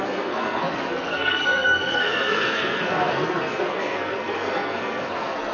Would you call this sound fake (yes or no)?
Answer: yes